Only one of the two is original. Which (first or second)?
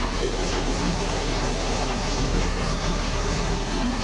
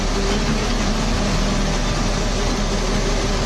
second